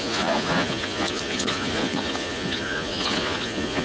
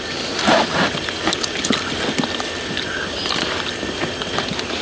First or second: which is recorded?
second